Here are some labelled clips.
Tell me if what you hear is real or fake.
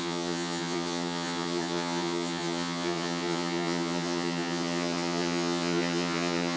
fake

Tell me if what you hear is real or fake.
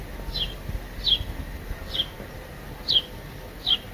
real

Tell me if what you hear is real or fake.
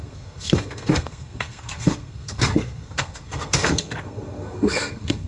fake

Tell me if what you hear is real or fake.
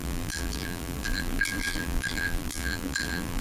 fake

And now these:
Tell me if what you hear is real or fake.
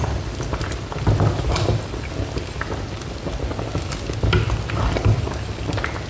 real